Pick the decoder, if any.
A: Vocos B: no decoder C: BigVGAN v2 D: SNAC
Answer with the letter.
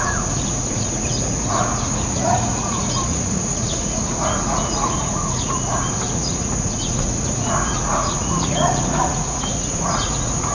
A